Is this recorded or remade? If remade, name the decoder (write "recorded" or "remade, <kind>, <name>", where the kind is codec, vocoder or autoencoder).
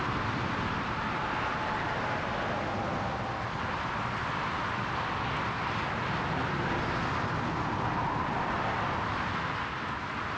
recorded